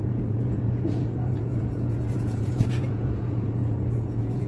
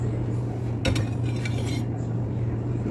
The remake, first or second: first